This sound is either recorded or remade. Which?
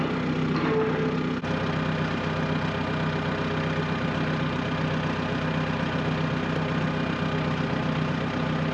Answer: recorded